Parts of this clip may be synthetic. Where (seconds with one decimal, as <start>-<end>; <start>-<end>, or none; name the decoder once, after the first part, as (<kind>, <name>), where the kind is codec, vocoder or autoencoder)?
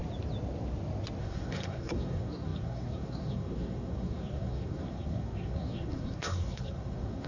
1.2-7.3 (codec, SNAC)